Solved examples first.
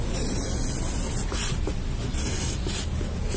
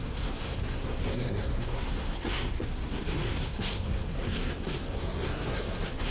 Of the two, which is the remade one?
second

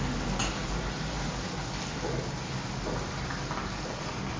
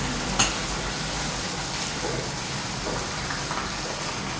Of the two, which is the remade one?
second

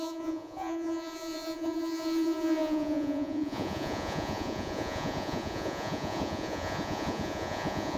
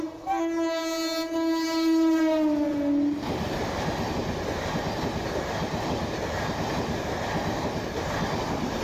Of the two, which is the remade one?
first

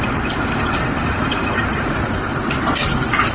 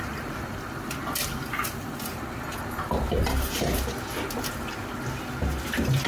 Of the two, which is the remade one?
first